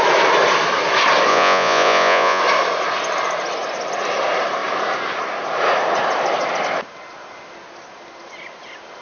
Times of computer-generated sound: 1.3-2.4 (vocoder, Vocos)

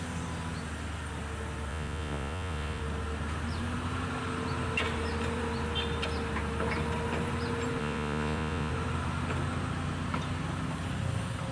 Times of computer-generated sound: 1.7-2.8 (vocoder, Vocos); 7.8-8.7